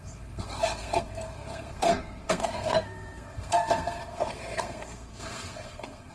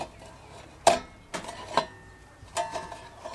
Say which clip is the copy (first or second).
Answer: first